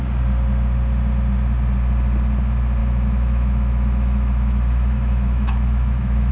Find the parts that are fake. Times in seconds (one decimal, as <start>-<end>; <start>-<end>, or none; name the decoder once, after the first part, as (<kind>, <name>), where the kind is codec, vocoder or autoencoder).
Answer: 2.8-6.3 (autoencoder, DAC-VAE)